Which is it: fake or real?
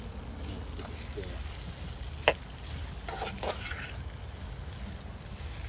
real